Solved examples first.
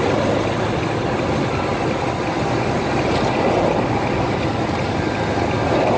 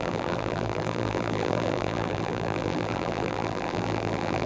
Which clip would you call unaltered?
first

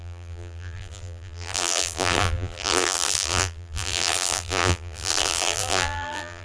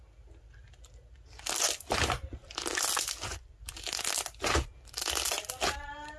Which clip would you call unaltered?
second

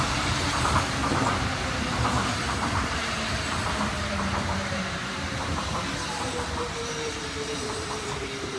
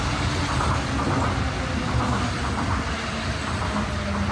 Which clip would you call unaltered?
second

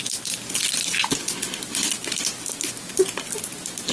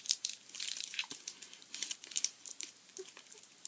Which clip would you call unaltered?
first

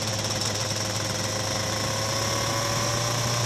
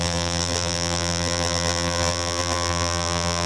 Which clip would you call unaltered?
first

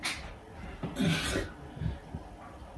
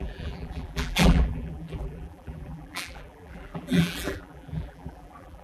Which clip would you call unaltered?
first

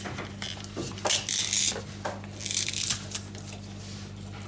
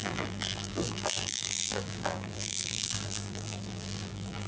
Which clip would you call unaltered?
first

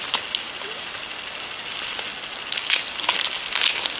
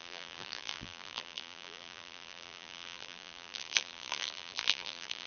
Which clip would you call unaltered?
first